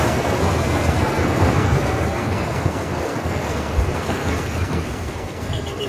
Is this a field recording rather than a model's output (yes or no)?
no